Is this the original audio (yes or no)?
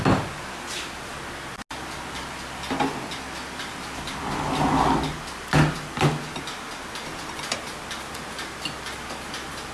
yes